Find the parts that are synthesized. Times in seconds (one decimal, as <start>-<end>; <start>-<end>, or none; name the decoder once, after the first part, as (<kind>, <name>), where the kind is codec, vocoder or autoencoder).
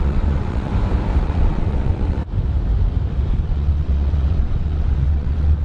0.0-0.7 (vocoder, WaveNeXt); 1.2-2.2; 3.3-5.6